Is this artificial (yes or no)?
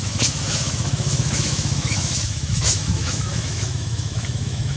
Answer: yes